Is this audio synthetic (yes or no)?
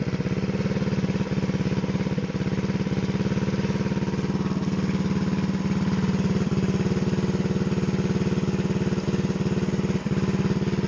no